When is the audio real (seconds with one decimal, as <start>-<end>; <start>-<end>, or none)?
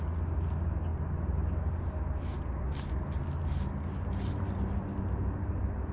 0.0-5.9